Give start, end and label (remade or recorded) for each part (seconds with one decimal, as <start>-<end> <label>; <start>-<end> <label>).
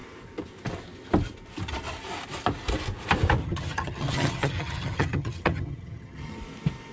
0.0-3.4 recorded; 3.4-6.4 remade; 6.4-6.9 recorded